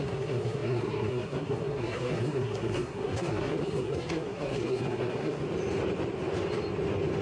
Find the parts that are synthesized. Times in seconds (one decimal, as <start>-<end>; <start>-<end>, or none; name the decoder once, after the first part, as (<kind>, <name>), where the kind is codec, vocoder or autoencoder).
0.0-5.4 (codec, SNAC)